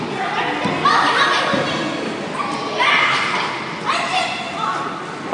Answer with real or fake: real